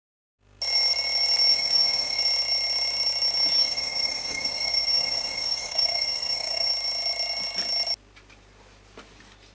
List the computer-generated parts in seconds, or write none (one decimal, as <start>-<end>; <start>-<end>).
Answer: 1.5-2.2; 3.6-6.7